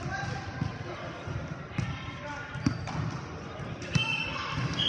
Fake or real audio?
real